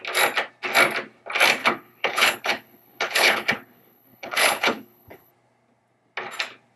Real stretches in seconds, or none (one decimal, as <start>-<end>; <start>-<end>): 0.0-1.6; 5.3-6.8